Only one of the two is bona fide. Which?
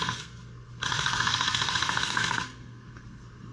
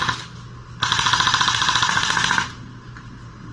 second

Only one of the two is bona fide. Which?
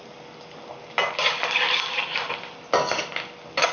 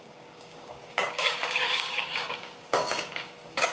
first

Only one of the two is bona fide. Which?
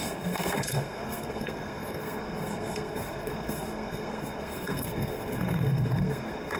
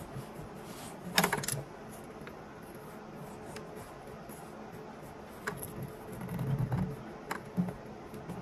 second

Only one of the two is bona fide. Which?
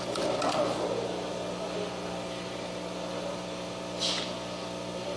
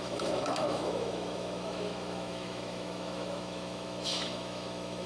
first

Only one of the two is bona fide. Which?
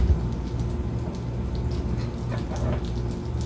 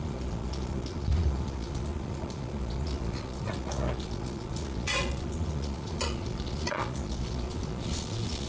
first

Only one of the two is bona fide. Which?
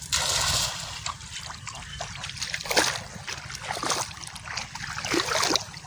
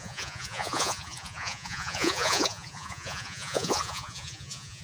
first